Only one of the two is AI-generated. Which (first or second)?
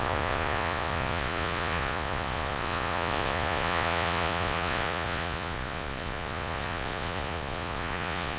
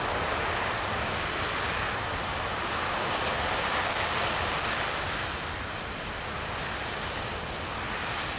first